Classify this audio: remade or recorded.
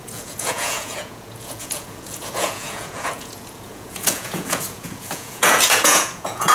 remade